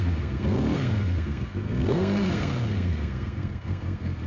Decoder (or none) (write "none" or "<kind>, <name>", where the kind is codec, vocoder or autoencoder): codec, SNAC